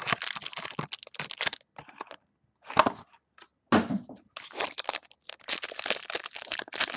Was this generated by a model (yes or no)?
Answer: no